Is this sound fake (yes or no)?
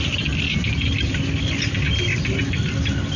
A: no